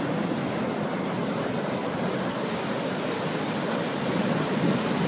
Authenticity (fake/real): real